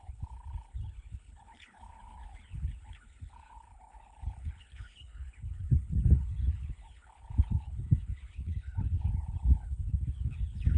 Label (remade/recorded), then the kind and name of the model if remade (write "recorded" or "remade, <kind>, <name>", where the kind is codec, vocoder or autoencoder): remade, codec, HILCodec